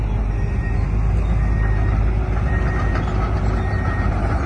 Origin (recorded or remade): recorded